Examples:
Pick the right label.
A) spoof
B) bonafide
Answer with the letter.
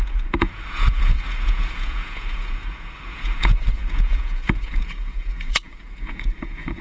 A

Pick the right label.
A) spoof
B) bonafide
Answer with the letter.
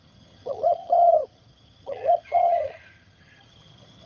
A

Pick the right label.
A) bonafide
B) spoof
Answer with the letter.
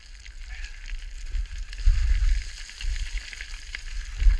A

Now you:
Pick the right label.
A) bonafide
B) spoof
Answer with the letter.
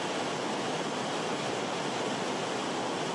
A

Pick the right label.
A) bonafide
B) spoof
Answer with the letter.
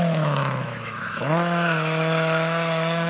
B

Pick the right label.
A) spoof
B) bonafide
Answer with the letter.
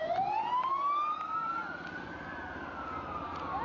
B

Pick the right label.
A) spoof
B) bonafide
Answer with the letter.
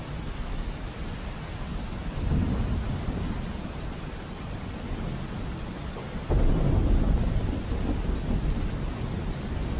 B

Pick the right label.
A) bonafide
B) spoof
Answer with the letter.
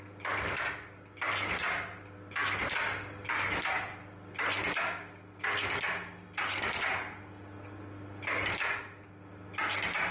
A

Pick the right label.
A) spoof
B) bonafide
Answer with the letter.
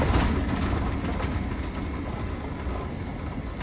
B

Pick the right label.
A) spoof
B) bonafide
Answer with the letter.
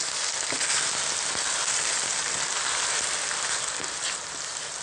B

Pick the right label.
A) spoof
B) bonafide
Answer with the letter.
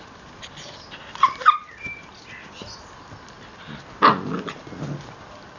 B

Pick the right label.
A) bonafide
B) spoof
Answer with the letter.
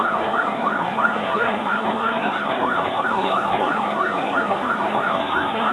B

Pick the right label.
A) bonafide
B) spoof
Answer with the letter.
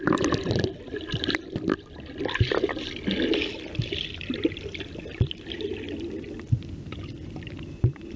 A